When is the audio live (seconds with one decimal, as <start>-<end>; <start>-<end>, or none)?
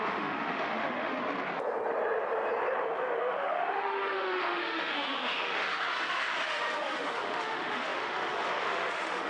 1.2-2.8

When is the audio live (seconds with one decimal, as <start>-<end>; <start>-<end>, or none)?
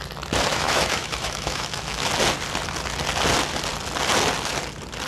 0.0-0.5; 2.1-5.1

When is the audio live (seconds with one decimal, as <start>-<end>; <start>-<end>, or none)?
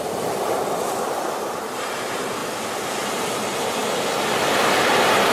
0.0-5.3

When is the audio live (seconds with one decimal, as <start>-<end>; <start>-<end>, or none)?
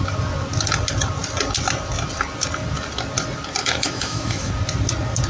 0.0-3.6; 4.5-5.3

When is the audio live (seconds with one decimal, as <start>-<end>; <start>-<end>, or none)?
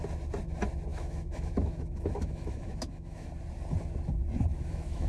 0.0-0.9; 3.3-4.5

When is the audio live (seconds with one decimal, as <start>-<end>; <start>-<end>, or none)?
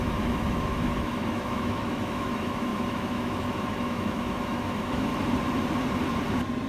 5.1-6.7